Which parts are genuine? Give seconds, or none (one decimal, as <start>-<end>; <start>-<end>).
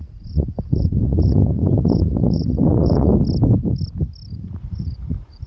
3.1-4.3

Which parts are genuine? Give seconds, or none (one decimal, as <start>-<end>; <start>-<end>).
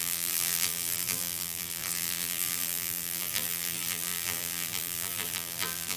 none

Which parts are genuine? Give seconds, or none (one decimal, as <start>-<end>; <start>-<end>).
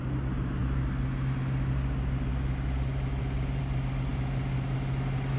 0.0-5.4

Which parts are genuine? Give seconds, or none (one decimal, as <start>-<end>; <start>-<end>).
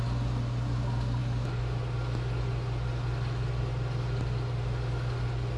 0.0-5.6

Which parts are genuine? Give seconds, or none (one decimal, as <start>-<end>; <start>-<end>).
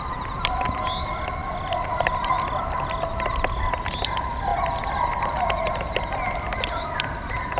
0.0-7.6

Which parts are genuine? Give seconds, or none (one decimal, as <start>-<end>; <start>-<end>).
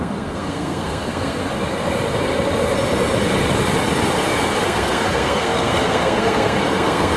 1.4-4.6